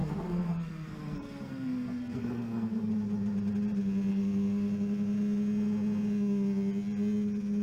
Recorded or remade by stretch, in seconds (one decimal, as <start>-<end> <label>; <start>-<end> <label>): 0.0-2.9 remade; 2.9-4.1 recorded; 4.1-4.7 remade; 4.7-7.6 recorded